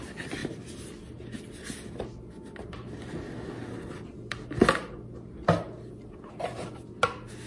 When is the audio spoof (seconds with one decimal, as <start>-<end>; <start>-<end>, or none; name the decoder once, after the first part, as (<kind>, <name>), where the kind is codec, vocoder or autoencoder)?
none